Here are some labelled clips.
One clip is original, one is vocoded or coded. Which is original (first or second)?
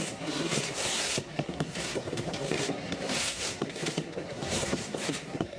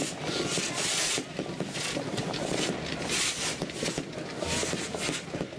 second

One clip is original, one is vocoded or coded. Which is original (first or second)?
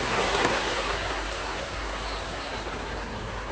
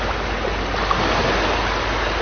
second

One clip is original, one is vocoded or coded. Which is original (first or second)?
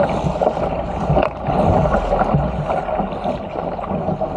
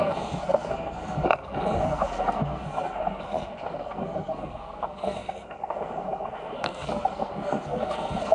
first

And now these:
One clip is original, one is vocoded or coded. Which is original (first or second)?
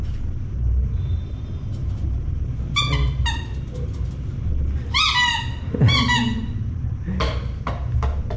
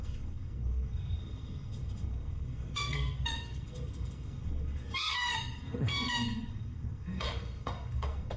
first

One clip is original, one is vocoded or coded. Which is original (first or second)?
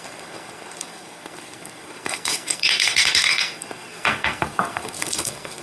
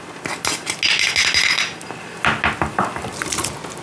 second